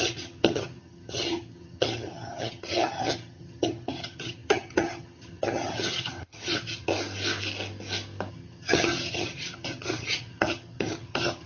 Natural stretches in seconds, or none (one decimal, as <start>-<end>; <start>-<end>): 6.9-8.3